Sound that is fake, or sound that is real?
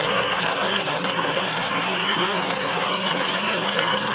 fake